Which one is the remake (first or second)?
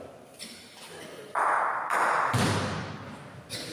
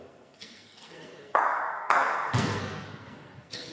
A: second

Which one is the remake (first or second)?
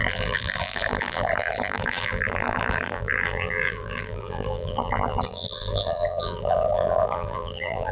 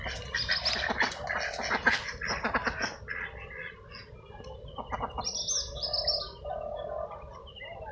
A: first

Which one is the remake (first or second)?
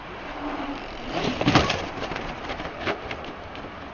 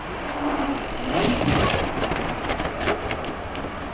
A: first